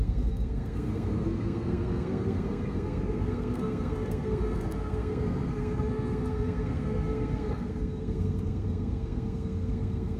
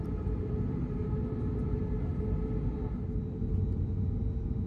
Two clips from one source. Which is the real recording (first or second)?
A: second